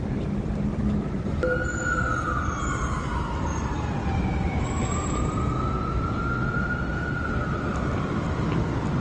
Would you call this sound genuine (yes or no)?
yes